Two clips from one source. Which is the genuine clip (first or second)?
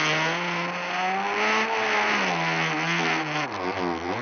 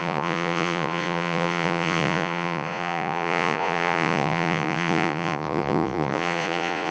first